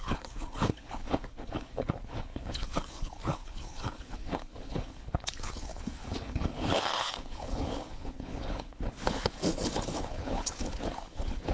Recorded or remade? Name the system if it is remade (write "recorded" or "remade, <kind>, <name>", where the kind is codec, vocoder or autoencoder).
remade, codec, HILCodec